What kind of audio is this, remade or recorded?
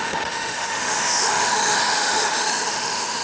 remade